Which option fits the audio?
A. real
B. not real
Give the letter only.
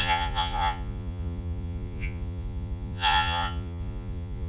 B